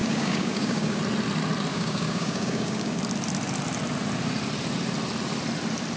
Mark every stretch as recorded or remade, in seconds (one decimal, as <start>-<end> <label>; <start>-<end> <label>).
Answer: 0.0-1.0 remade; 1.0-1.7 recorded; 1.7-3.0 remade; 3.0-6.0 recorded